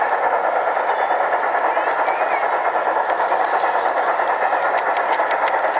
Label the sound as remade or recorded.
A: recorded